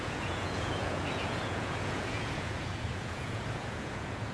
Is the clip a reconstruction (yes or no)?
yes